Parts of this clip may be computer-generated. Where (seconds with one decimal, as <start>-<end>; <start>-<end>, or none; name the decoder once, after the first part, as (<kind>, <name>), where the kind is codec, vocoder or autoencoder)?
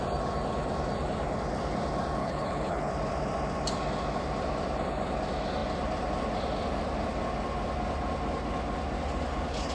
2.2-2.9 (codec, HILCodec)